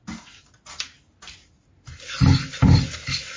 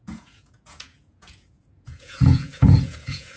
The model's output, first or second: second